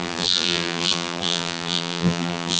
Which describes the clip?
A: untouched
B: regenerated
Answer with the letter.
B